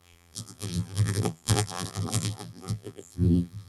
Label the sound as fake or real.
fake